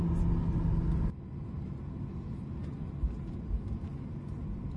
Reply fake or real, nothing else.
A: real